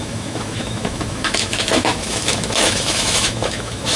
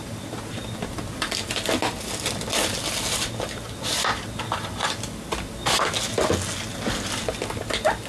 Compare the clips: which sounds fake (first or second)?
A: first